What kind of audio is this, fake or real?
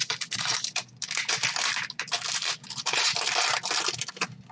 real